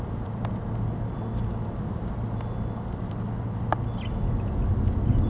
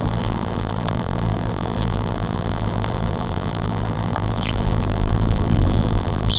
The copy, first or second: second